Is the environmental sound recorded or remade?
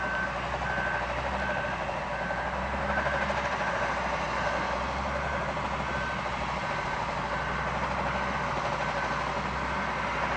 recorded